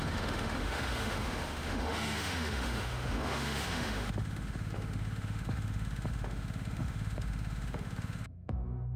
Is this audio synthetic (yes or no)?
yes